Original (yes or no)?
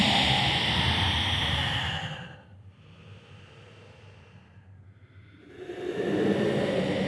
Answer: yes